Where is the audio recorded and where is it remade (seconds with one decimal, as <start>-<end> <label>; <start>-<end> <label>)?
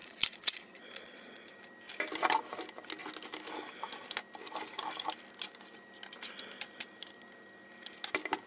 0.0-1.5 remade; 1.5-8.5 recorded